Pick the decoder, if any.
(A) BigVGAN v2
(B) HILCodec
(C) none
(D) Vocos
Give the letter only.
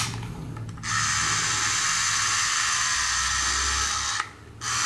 C